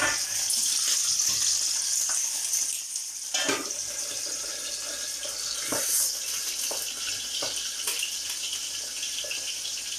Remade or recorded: recorded